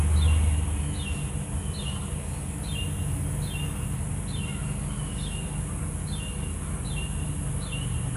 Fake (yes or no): no